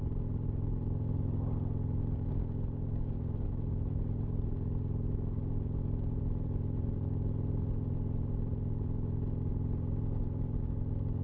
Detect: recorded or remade recorded